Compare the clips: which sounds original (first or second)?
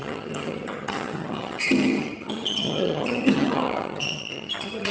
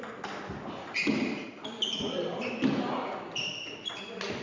second